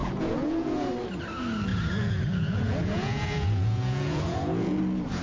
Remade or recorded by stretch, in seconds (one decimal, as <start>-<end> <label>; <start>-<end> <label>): 0.0-0.9 remade; 0.9-1.7 recorded; 1.7-4.8 remade; 4.8-5.2 recorded